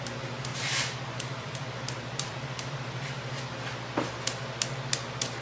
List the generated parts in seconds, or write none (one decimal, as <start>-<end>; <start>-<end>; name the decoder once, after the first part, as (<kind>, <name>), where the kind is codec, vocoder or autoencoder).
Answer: 0.5-3.4 (vocoder, BigVGAN v2)